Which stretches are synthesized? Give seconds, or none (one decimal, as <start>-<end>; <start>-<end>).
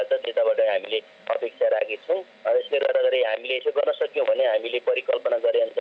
none